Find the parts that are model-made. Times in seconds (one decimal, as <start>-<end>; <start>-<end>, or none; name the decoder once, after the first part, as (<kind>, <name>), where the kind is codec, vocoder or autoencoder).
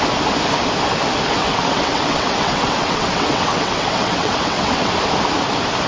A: 1.4-4.9 (vocoder, WaveNeXt)